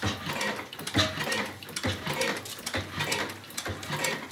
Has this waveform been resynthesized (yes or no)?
no